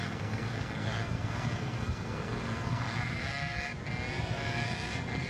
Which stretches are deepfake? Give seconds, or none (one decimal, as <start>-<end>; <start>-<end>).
0.0-3.7; 4.2-5.3